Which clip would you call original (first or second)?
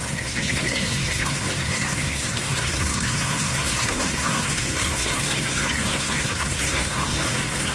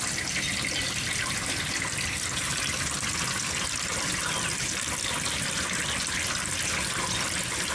second